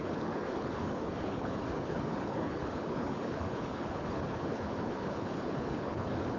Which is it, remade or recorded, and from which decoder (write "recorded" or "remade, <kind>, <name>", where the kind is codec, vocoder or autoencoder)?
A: remade, codec, HILCodec